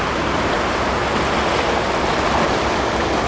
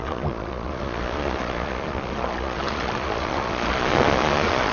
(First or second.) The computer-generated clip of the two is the second